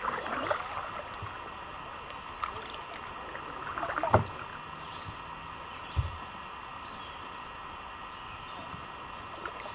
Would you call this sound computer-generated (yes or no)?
no